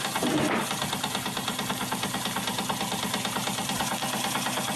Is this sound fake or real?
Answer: real